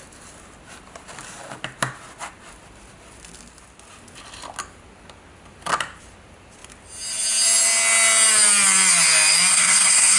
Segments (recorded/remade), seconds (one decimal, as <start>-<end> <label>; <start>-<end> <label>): 0.0-9.5 recorded; 9.5-10.2 remade